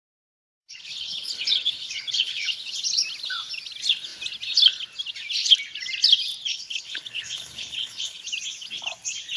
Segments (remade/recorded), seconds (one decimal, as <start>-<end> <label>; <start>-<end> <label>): 0.0-0.6 recorded; 0.6-2.8 remade; 2.8-6.5 recorded; 6.5-8.2 remade; 8.2-9.4 recorded